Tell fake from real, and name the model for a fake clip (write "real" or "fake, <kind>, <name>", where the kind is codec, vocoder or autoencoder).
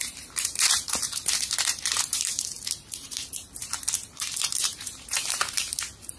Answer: fake, vocoder, BigVGAN v2